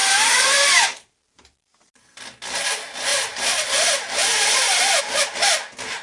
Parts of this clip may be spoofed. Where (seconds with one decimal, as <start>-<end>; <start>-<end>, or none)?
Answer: 0.0-2.2; 3.1-5.0